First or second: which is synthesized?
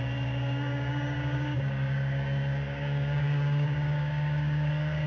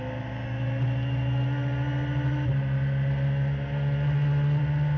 first